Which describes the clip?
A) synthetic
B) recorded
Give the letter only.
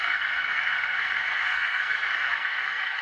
A